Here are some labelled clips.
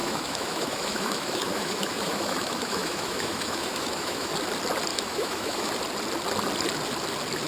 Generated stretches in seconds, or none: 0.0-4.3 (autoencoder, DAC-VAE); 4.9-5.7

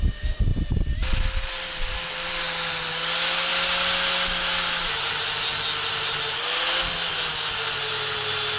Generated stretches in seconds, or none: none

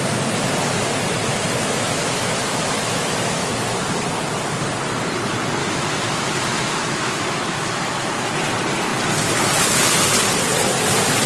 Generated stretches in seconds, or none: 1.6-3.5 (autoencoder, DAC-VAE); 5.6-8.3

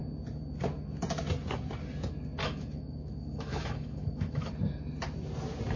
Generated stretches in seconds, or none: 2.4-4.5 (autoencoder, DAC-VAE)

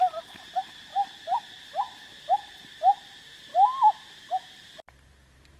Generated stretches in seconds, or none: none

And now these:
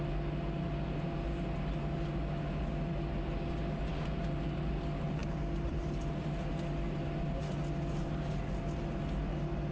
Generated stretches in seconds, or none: none